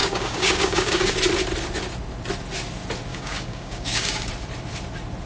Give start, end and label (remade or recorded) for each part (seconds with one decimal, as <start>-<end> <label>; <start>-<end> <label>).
0.0-1.1 remade; 1.1-3.1 recorded; 3.1-4.3 remade; 4.3-5.3 recorded